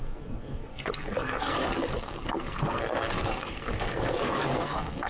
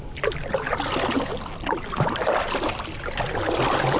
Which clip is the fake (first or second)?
first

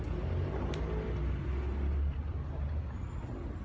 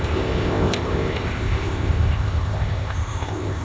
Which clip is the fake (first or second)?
second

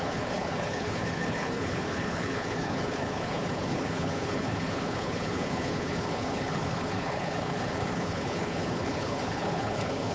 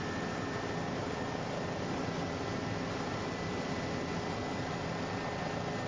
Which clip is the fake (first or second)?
first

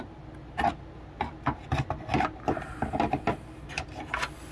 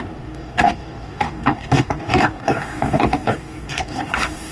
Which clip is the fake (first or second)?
second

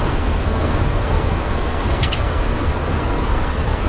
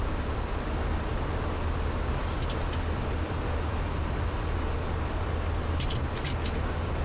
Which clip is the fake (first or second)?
first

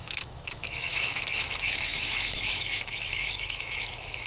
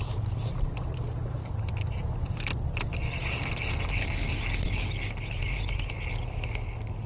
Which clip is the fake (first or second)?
first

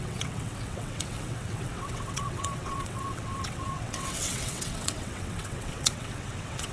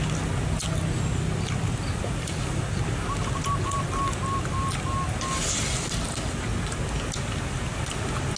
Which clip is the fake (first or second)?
first